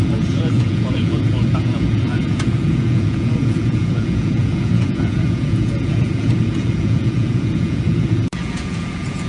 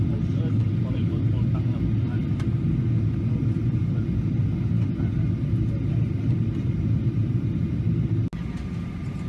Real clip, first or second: second